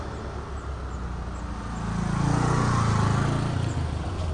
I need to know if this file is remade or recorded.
recorded